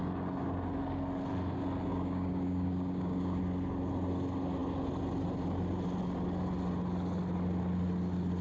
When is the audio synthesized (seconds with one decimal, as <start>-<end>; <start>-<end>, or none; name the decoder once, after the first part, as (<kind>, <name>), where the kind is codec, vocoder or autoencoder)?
1.9-3.4 (codec, DAC)